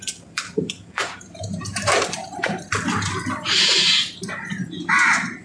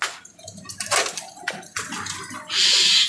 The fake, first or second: first